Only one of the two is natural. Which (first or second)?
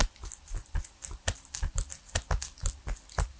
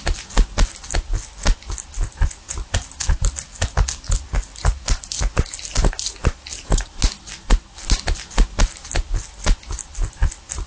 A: second